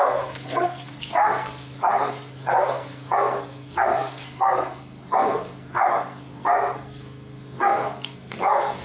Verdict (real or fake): fake